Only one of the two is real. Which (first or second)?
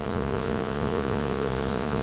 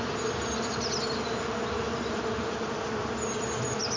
second